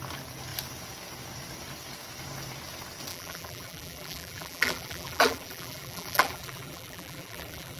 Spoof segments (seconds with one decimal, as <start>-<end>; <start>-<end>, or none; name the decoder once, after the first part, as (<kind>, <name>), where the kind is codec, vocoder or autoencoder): 3.1-7.8 (vocoder, BigVGAN v2)